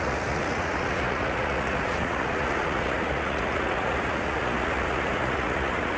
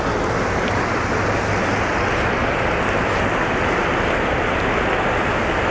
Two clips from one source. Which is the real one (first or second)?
second